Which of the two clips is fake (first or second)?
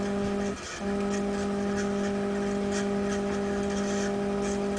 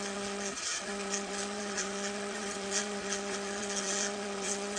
second